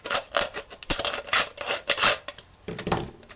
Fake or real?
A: real